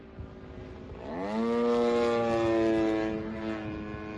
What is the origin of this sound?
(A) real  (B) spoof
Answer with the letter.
A